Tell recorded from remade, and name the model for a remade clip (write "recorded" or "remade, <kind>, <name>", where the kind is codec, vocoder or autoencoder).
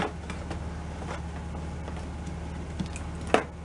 recorded